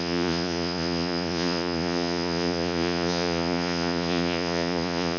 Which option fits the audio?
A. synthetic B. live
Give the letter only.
A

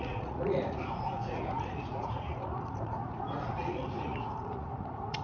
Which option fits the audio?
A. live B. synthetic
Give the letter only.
B